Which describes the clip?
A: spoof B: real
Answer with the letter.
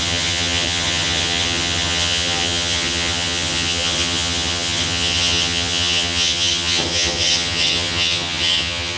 A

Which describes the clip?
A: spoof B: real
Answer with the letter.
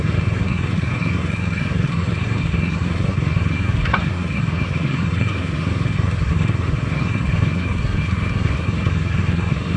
A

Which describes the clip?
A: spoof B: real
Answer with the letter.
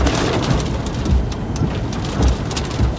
B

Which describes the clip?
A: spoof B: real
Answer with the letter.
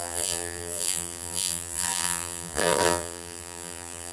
A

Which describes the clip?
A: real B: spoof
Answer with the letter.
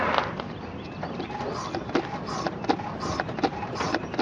A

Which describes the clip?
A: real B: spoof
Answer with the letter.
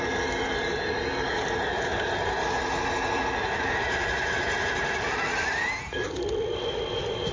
A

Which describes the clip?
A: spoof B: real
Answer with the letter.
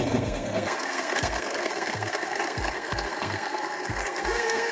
A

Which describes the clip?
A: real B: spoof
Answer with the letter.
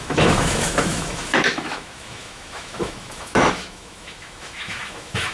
B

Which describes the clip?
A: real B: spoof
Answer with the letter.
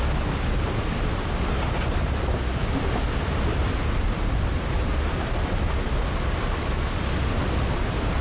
A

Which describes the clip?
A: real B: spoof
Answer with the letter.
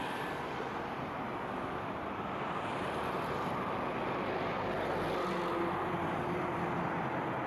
A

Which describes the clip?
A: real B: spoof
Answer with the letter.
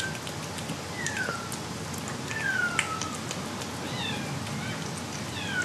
A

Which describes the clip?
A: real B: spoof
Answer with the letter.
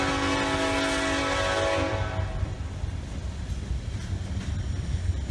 A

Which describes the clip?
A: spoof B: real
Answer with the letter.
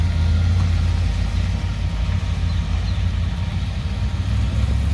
B